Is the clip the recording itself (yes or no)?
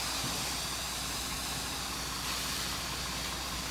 yes